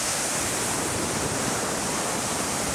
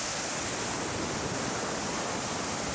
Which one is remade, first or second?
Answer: first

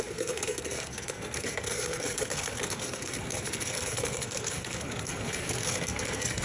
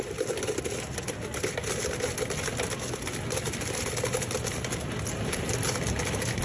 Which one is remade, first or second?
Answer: first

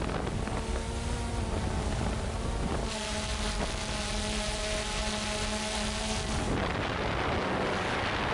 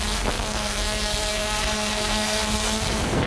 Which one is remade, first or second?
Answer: second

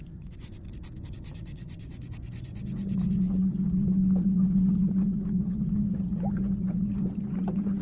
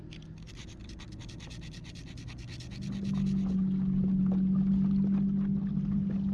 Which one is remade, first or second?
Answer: first